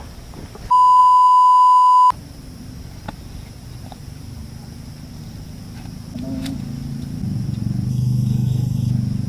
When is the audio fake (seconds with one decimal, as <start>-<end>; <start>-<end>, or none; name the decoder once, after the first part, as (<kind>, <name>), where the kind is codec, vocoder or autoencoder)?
7.9-8.9 (codec, SNAC)